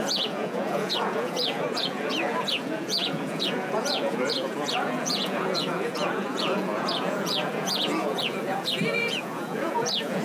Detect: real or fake fake